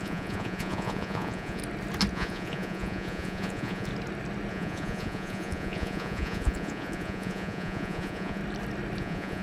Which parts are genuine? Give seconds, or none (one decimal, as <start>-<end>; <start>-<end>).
1.6-2.1; 3.9-4.5; 8.4-9.0